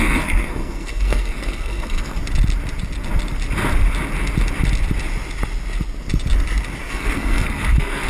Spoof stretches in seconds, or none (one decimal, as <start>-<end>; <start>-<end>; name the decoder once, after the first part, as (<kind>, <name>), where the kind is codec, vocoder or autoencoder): 0.0-2.2 (codec, SNAC); 6.8-8.1